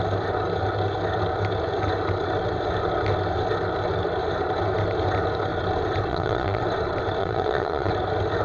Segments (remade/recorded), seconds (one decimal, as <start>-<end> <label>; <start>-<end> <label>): 0.0-6.1 recorded; 6.1-6.6 remade; 6.6-7.2 recorded; 7.2-7.9 remade; 7.9-8.4 recorded